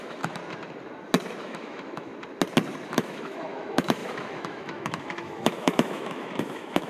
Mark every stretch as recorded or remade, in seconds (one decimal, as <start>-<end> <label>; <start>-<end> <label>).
0.0-0.4 remade; 0.4-1.4 recorded; 1.4-2.1 remade; 2.1-2.9 recorded; 2.9-6.9 remade

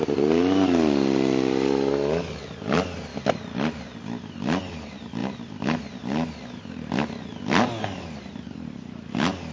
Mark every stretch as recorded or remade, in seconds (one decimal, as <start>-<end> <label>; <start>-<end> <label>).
0.0-9.5 recorded

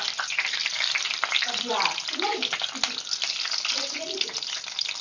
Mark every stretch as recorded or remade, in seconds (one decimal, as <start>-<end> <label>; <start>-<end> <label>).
0.0-5.0 recorded

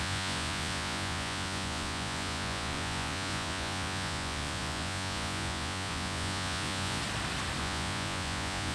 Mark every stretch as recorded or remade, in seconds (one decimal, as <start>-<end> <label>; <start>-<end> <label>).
0.0-7.0 remade; 7.0-7.6 recorded; 7.6-8.7 remade

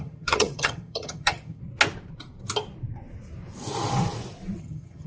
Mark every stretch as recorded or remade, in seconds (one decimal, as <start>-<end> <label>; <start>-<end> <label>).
0.0-1.6 remade; 1.6-4.6 recorded; 4.6-5.1 remade

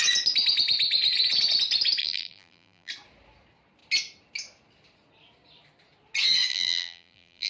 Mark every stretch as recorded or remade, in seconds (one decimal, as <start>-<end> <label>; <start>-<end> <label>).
0.0-2.0 recorded; 2.0-2.9 remade; 2.9-6.5 recorded; 6.5-7.5 remade

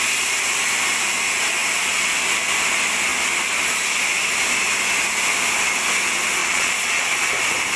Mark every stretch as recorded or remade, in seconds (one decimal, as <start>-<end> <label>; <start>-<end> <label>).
0.0-6.4 recorded; 6.4-7.1 remade; 7.1-7.8 recorded